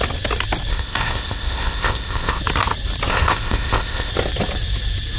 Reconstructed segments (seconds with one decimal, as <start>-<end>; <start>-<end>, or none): 0.7-2.4; 3.1-4.1